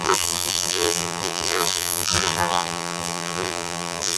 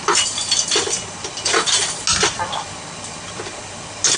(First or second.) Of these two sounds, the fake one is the first